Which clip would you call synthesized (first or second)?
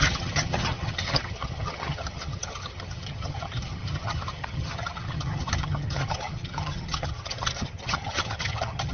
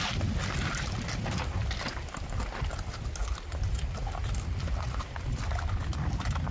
first